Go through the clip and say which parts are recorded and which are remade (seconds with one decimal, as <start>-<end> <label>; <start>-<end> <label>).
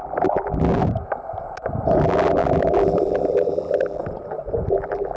0.0-0.7 remade; 0.7-2.0 recorded; 2.0-4.0 remade; 4.0-4.7 recorded; 4.7-5.2 remade